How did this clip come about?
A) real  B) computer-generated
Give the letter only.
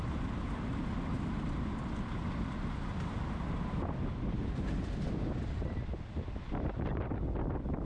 A